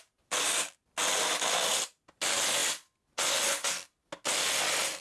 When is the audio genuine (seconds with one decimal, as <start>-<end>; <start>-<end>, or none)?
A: 0.0-5.0